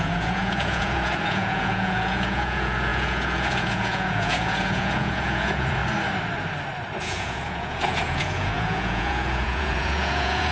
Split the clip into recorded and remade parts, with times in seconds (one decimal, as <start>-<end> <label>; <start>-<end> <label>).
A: 0.0-5.8 remade; 5.8-7.0 recorded; 7.0-10.5 remade